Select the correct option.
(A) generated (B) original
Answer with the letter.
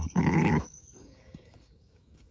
A